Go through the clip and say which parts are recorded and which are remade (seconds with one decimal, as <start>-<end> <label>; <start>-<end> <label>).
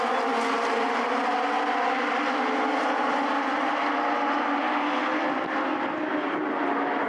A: 0.0-7.1 recorded